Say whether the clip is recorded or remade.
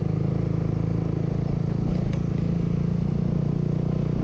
recorded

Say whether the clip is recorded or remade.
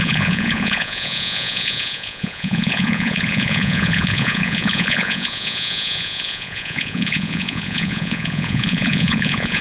remade